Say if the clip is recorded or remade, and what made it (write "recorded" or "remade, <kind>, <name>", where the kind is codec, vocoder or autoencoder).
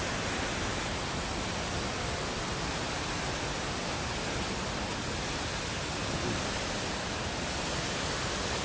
recorded